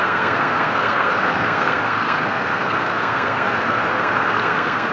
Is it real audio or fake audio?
fake